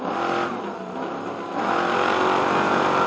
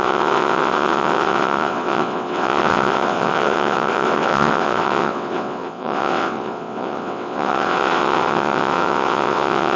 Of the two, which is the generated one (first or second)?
second